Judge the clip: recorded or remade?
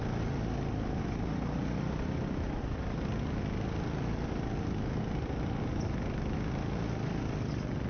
recorded